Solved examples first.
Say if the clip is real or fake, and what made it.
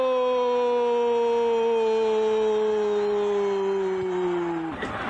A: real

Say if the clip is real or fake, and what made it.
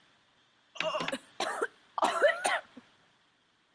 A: real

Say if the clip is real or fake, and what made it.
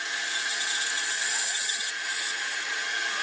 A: fake, vocoder, Vocos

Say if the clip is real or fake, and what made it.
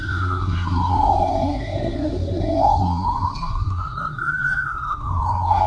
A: fake, codec, SNAC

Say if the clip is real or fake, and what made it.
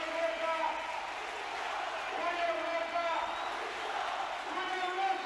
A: real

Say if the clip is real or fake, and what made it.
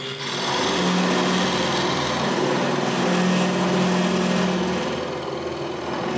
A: real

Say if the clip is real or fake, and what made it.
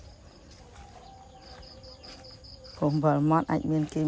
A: real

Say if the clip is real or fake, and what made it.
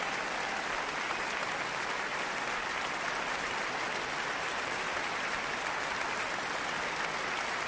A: real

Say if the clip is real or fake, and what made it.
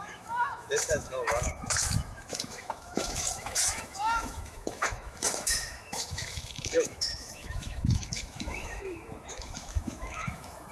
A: fake, autoencoder, DAC-VAE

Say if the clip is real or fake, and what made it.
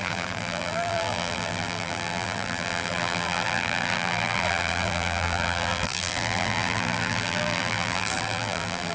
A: fake, vocoder, BigVGAN v2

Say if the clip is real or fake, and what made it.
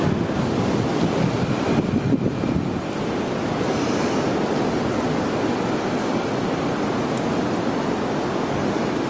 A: real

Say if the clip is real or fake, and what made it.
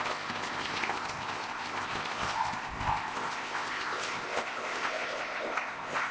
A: fake, codec, ZipCodec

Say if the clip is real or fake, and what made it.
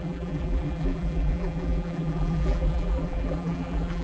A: fake, vocoder, BigVGAN v2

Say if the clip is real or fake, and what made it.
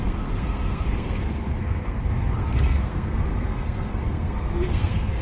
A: fake, codec, SNAC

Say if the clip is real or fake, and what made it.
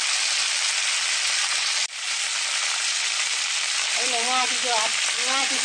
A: real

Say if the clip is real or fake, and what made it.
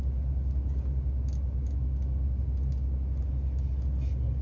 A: real